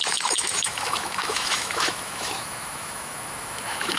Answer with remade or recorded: remade